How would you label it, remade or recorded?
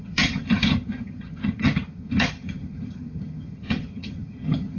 remade